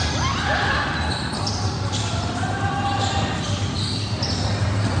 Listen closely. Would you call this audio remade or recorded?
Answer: recorded